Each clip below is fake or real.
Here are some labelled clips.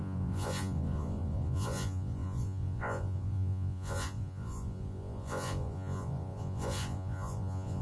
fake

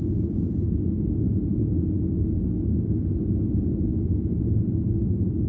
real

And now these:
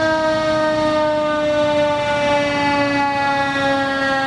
real